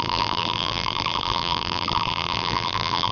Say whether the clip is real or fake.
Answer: fake